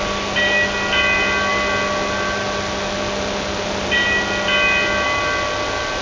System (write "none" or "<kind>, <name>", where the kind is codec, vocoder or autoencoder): none